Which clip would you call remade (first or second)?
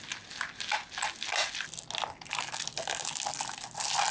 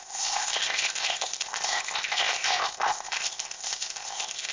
second